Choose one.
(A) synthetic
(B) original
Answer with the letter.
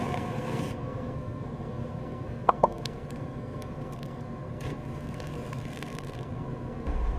A